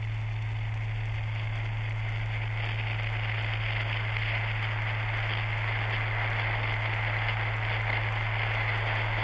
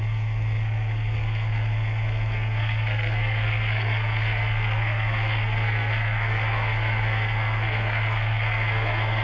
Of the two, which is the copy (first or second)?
second